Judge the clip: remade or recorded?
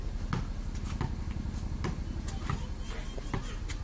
recorded